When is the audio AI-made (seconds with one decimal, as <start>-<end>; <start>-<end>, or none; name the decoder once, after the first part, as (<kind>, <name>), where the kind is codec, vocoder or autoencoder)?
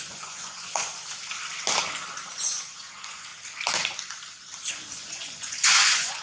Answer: 0.0-0.9 (vocoder, Vocos); 2.3-3.3; 4.7-6.2